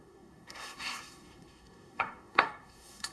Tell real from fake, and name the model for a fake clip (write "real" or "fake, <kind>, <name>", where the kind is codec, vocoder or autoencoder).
fake, codec, SNAC